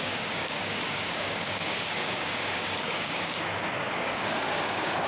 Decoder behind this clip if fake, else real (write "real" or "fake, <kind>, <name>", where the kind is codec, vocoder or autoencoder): fake, codec, DAC